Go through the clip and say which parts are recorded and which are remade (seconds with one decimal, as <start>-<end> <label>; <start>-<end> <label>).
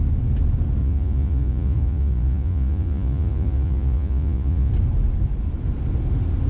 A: 0.0-0.8 recorded; 0.8-4.7 remade; 4.7-6.5 recorded